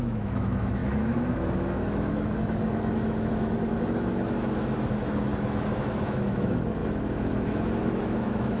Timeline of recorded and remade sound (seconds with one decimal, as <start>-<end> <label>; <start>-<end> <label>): 0.0-8.6 remade